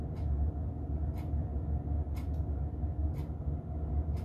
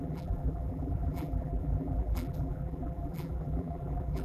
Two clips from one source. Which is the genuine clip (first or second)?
first